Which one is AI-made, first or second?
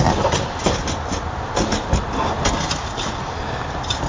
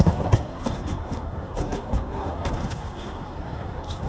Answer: second